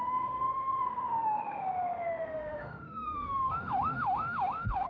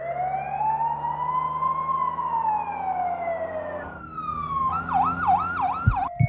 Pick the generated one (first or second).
first